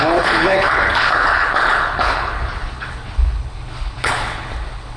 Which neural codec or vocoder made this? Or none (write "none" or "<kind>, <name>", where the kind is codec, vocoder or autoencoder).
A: codec, HILCodec